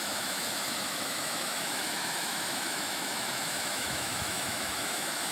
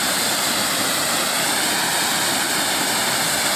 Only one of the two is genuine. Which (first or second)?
second